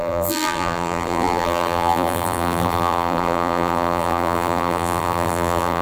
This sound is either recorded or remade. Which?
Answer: remade